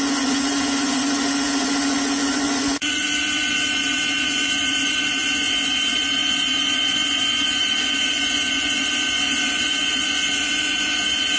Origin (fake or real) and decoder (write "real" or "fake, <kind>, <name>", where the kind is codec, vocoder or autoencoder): fake, vocoder, Vocos